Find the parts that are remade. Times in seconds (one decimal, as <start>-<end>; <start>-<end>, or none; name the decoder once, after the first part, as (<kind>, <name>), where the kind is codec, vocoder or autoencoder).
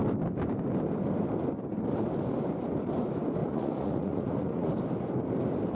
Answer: 3.4-4.7 (vocoder, Vocos)